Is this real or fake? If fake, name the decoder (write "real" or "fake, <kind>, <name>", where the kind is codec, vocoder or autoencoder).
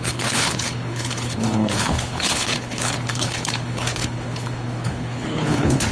fake, codec, HILCodec